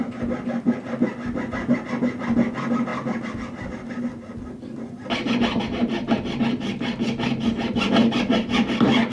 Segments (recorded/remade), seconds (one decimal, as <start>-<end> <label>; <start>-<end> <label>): 0.0-9.1 recorded